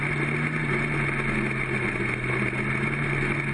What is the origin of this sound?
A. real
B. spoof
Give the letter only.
A